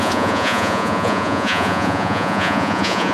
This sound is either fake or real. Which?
fake